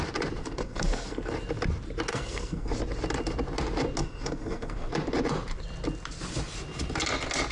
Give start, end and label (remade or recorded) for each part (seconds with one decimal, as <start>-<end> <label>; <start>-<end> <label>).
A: 0.0-0.4 recorded; 0.4-1.3 remade; 1.3-2.1 recorded; 2.1-2.7 remade; 2.7-4.0 recorded; 4.0-4.9 remade; 4.9-7.5 recorded